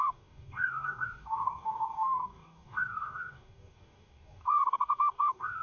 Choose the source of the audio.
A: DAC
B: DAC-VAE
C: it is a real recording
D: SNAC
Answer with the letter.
A